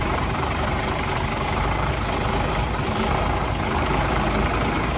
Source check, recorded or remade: remade